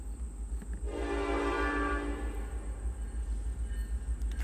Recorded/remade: recorded